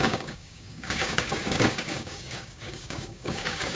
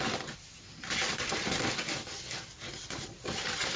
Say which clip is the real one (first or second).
second